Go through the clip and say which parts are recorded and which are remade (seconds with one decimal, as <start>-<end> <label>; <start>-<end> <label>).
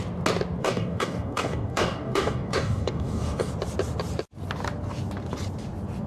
0.0-0.6 recorded; 0.6-3.5 remade; 3.5-6.1 recorded